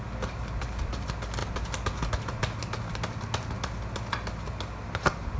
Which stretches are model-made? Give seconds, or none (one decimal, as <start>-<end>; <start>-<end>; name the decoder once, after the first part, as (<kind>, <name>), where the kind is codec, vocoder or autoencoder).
none